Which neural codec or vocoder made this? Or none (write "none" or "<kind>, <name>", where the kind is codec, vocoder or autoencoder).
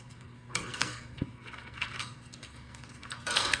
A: codec, SNAC